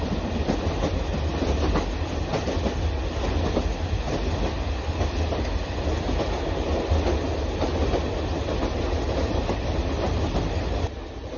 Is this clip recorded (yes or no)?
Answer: yes